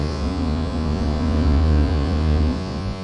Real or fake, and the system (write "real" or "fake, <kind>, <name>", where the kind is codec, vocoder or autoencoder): fake, vocoder, Vocos